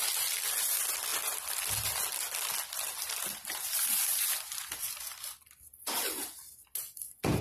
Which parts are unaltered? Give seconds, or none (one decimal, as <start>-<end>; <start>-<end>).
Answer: 0.0-7.4